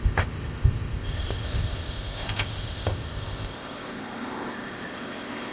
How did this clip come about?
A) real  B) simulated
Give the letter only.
B